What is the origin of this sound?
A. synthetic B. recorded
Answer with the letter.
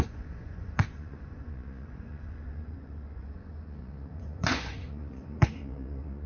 A